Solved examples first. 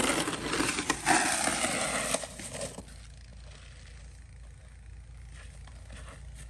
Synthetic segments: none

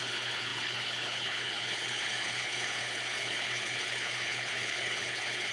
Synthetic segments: 0.0-5.5 (codec, HILCodec)

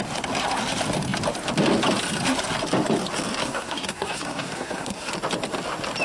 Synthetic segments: 3.4-5.1 (codec, SNAC)

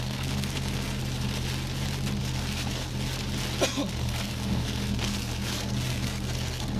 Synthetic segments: 0.0-1.0 (codec, SNAC); 2.2-2.9; 4.0-6.8

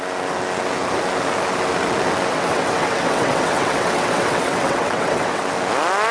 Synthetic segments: 2.3-5.4 (vocoder, WaveNeXt)

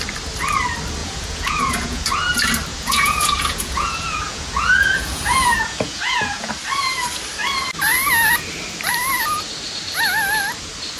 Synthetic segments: 1.0-2.0 (vocoder, Vocos); 2.7-6.5

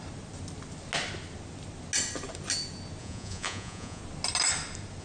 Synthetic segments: 3.0-4.0 (vocoder, Vocos)